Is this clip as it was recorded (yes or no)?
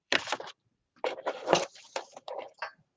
no